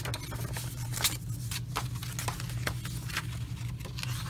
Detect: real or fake real